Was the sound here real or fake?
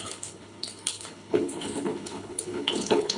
fake